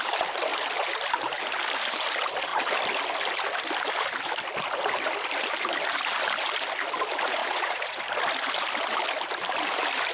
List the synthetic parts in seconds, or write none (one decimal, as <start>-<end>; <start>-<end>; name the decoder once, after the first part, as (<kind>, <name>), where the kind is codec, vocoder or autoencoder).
7.4-8.0 (vocoder, Vocos)